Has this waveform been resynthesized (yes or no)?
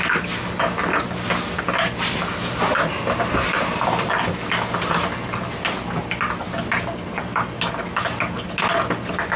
no